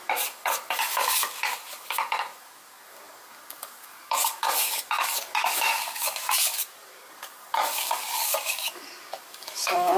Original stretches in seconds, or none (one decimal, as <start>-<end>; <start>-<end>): none